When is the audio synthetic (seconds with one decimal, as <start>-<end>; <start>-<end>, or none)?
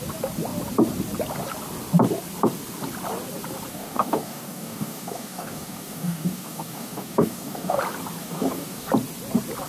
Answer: 3.7-7.8; 8.2-8.9